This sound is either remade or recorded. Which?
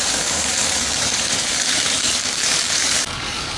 remade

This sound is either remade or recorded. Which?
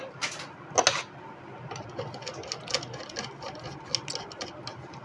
recorded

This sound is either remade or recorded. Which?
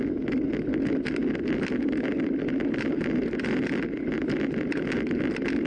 recorded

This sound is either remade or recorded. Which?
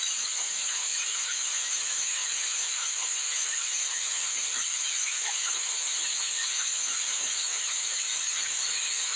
remade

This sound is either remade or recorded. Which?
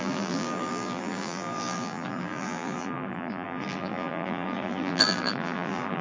remade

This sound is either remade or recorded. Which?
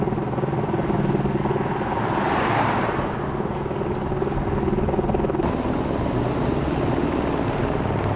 recorded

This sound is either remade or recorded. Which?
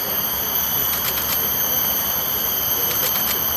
recorded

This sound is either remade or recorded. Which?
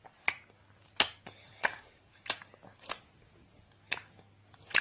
recorded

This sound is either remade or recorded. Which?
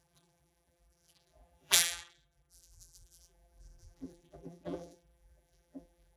remade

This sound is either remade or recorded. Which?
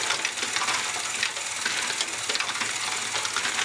recorded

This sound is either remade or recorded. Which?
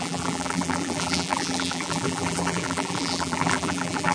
remade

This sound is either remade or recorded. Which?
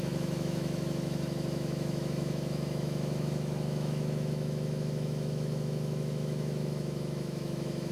remade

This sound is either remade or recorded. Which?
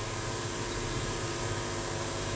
remade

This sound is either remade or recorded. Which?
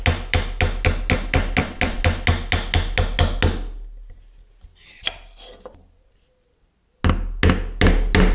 recorded